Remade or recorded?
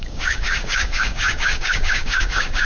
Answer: remade